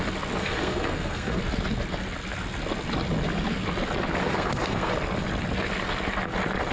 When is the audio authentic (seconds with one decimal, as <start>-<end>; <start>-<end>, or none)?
0.0-0.4; 1.4-4.2; 4.9-6.7